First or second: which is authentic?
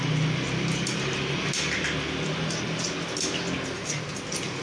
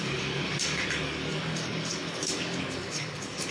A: first